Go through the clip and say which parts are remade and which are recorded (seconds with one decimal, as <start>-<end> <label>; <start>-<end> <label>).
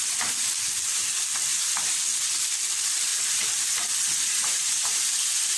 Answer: 0.0-1.5 recorded; 1.5-2.0 remade; 2.0-3.1 recorded; 3.1-3.9 remade; 3.9-4.4 recorded; 4.4-5.1 remade; 5.1-5.6 recorded